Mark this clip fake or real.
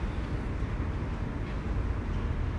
real